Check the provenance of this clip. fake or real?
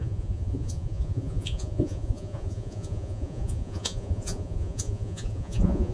fake